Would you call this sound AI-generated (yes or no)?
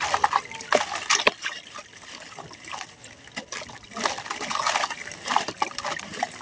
no